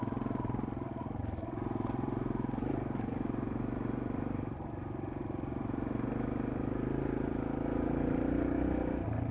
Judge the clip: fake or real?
real